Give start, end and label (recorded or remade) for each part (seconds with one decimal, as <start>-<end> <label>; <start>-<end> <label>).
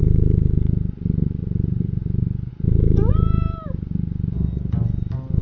0.0-5.4 recorded